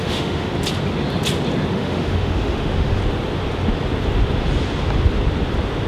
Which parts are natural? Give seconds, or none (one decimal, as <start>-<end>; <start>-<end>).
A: 0.5-1.7; 3.0-5.9